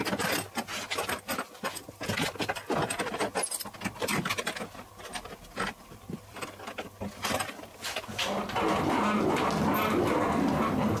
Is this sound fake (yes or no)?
no